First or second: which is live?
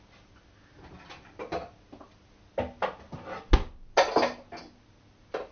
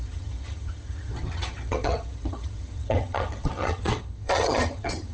first